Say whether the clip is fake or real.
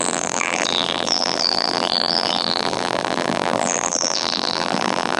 fake